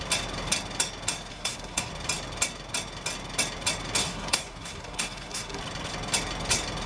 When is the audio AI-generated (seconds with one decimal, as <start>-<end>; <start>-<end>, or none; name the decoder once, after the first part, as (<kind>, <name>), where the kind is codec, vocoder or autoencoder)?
1.3-1.9 (codec, SNAC); 4.0-5.6